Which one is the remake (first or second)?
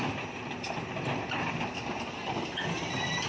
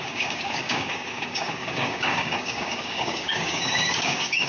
second